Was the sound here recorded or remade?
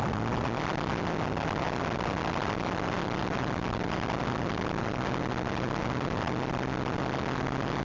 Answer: recorded